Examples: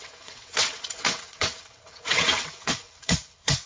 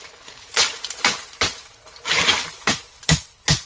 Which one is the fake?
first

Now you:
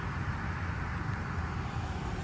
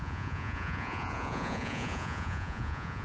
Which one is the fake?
second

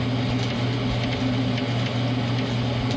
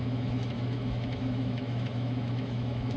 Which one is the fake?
second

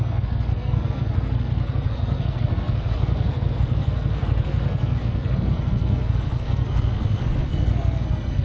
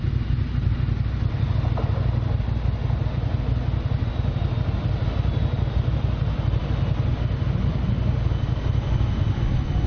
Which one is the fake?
first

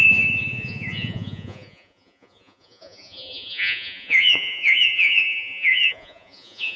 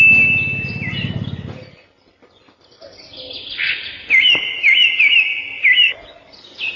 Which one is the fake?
first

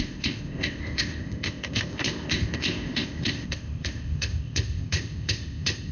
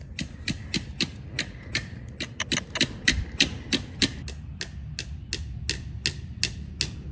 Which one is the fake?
first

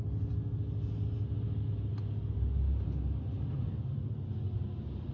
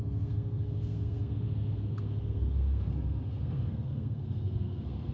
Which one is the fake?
second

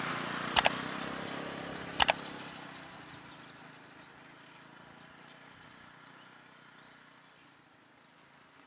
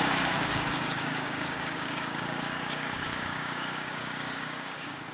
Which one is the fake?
second